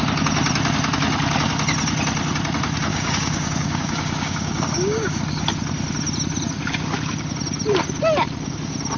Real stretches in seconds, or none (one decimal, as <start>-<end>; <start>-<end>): 0.0-2.9; 5.2-9.0